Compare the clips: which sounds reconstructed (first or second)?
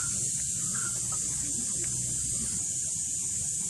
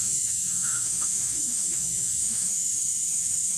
second